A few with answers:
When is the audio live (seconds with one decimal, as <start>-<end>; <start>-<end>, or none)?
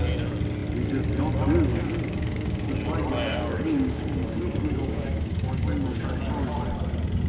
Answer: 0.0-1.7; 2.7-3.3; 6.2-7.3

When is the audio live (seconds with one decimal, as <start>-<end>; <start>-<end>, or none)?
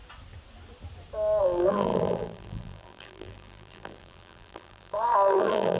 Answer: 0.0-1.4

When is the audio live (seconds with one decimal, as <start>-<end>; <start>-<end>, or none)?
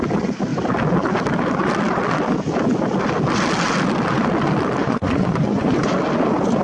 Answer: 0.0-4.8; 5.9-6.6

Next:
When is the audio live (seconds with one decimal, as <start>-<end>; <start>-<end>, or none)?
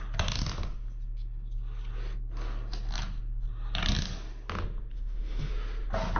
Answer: 0.0-4.9; 5.5-6.2